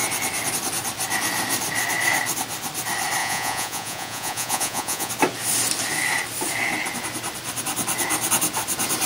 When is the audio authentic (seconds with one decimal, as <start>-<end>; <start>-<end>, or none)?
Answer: 0.0-3.2; 5.1-9.1